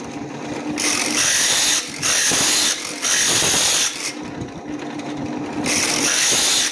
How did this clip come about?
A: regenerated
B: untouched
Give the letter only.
B